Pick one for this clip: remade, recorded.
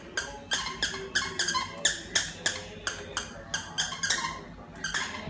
recorded